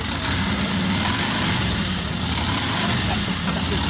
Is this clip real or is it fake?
real